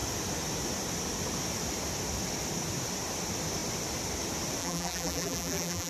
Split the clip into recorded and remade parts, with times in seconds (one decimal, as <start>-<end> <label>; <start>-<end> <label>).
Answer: 0.0-4.6 recorded; 4.6-5.9 remade